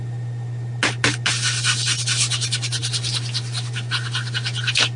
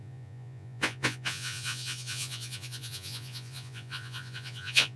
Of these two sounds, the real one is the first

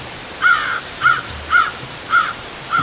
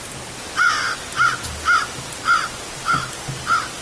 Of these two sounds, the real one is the second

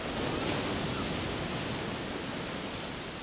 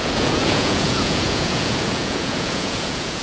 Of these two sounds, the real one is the first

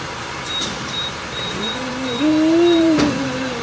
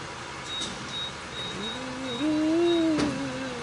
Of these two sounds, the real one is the second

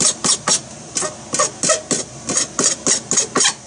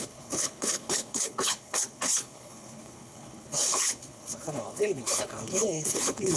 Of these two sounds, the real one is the first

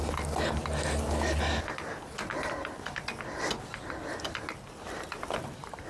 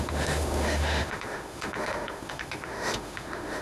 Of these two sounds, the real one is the first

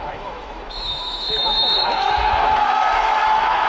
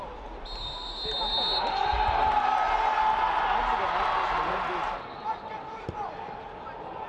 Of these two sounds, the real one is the second